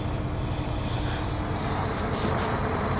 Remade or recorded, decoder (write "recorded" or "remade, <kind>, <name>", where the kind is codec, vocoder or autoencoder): recorded